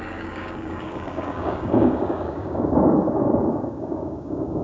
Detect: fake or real fake